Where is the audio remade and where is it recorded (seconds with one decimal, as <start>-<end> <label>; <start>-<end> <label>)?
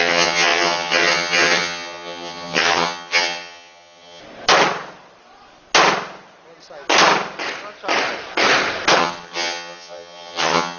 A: 0.0-4.2 remade; 4.2-9.0 recorded; 9.0-10.8 remade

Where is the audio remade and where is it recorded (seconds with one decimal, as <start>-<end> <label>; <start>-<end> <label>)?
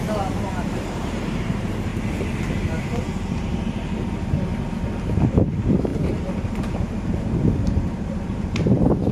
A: 0.0-1.9 remade; 1.9-2.8 recorded; 2.8-9.1 remade